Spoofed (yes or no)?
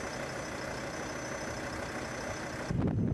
no